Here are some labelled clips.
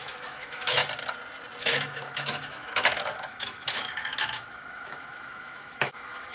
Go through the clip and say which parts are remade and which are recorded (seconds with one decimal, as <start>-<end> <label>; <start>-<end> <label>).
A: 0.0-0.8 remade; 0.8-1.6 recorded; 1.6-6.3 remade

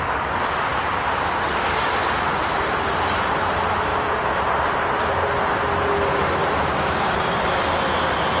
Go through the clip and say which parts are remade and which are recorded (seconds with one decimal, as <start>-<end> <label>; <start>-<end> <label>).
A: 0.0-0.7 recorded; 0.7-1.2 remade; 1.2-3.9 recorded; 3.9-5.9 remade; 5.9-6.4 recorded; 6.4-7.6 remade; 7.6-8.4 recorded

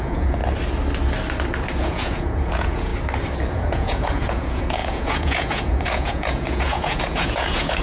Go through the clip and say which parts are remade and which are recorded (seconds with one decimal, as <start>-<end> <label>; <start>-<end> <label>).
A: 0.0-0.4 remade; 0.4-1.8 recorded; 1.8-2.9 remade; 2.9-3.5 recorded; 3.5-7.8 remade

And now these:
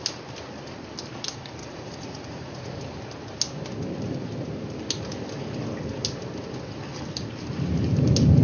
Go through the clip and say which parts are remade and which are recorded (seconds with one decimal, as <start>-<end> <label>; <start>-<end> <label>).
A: 0.0-1.6 recorded; 1.6-2.8 remade; 2.8-8.4 recorded

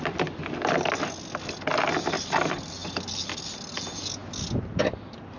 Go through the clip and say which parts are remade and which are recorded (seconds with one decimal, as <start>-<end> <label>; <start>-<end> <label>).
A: 0.0-5.4 recorded